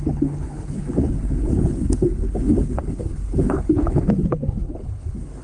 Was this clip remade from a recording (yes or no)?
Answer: yes